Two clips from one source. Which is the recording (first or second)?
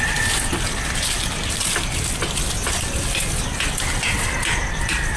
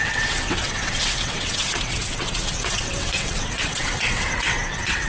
first